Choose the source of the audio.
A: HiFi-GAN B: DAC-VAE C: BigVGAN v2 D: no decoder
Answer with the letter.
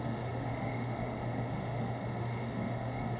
B